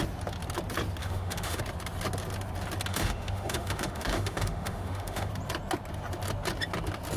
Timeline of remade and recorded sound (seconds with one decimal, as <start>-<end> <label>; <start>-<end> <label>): 0.0-1.0 recorded; 1.0-1.6 remade; 1.6-2.9 recorded; 2.9-5.3 remade; 5.3-7.2 recorded